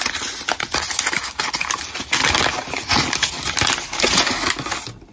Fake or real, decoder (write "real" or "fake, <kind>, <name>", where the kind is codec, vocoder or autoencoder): real